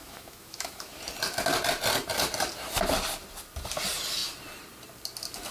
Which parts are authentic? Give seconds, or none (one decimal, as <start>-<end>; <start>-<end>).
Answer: 1.0-5.5